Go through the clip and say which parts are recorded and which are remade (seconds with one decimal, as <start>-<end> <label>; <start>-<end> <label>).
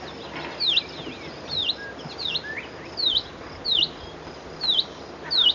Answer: 0.0-5.5 recorded